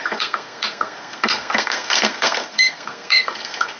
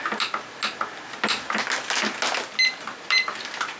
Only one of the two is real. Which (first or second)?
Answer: second